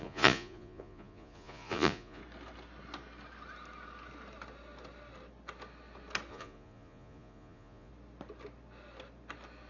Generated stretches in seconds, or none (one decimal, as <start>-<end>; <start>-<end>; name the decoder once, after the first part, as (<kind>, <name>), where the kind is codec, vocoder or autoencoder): 0.0-2.2 (vocoder, Vocos); 6.3-7.9